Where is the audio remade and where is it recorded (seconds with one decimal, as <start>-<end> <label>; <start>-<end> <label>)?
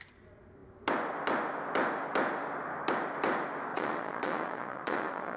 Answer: 0.0-3.7 recorded; 3.7-5.4 remade